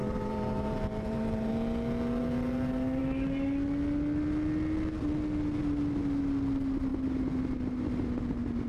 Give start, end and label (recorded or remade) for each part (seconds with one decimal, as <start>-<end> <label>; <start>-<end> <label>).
0.0-1.5 remade; 1.5-8.7 recorded

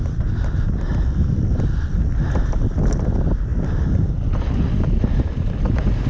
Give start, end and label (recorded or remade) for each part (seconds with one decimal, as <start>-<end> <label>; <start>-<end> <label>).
0.0-0.9 recorded; 0.9-1.9 remade; 1.9-3.5 recorded; 3.5-4.0 remade; 4.0-6.1 recorded

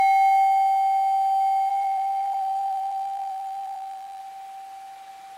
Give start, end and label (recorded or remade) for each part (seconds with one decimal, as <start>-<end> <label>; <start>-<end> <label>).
0.0-1.7 recorded; 1.7-4.2 remade; 4.2-5.4 recorded

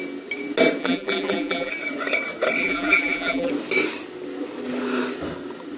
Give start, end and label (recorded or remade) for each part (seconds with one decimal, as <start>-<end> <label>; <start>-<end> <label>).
0.0-0.8 recorded; 0.8-1.7 remade; 1.7-2.6 recorded; 2.6-3.5 remade; 3.5-5.8 recorded

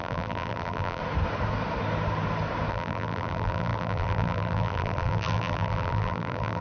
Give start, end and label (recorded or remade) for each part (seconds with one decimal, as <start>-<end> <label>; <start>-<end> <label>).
0.0-1.0 remade; 1.0-2.7 recorded; 2.7-6.6 remade